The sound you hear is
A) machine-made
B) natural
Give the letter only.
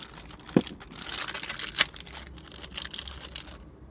B